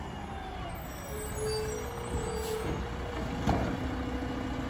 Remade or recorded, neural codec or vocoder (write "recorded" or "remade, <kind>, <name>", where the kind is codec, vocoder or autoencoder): recorded